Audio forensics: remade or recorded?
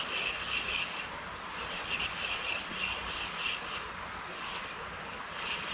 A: recorded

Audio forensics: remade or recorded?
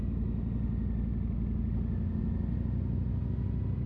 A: recorded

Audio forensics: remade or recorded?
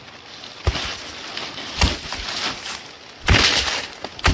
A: recorded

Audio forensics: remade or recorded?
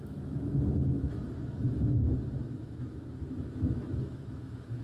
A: remade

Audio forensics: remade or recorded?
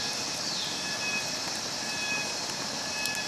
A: recorded